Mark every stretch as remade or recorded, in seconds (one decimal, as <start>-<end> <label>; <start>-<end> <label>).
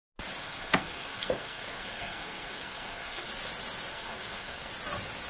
0.0-0.4 recorded; 0.4-3.3 remade; 3.3-3.9 recorded; 3.9-4.7 remade; 4.7-5.3 recorded